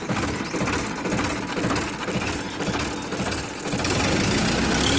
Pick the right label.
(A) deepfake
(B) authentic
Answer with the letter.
B